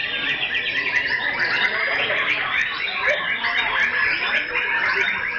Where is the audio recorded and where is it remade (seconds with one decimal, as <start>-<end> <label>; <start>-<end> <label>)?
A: 0.0-5.4 recorded